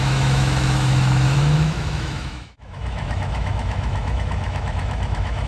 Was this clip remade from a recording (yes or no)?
yes